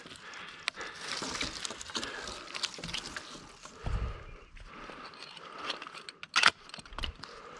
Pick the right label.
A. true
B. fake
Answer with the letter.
A